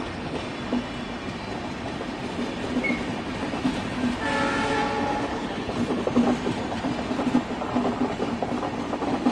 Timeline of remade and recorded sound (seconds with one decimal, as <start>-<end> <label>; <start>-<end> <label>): 0.0-5.3 recorded; 5.3-6.0 remade; 6.0-9.3 recorded